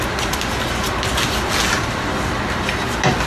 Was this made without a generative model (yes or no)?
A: yes